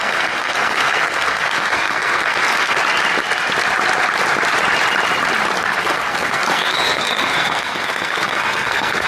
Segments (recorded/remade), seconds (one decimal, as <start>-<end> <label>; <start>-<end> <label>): 0.0-2.8 remade; 2.8-5.6 recorded; 5.6-9.1 remade